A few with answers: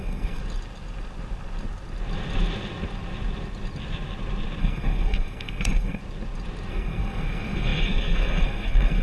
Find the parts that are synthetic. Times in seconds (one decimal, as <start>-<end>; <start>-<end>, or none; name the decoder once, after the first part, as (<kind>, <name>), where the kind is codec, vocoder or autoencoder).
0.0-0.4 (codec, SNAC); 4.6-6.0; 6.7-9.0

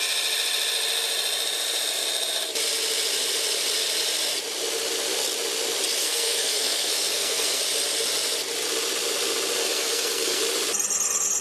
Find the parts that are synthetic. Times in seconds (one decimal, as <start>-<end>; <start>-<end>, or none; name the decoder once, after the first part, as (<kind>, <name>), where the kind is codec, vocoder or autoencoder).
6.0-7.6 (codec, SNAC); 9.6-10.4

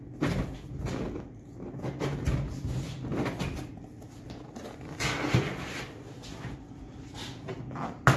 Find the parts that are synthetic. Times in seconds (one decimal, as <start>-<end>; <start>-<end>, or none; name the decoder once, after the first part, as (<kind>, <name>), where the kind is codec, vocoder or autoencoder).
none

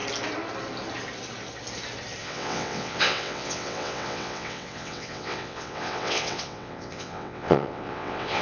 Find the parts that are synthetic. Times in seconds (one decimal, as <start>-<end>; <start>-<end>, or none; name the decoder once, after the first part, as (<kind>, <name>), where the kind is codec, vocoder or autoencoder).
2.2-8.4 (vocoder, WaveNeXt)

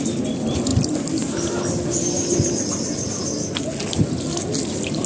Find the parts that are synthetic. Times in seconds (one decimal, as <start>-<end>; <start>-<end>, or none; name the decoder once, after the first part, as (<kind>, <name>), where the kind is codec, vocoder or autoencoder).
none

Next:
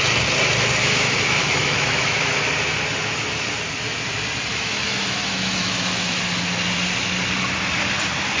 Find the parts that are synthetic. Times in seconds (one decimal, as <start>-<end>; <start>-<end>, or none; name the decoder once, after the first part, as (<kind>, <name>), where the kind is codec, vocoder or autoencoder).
0.8-2.4 (autoencoder, DAC-VAE); 4.5-6.2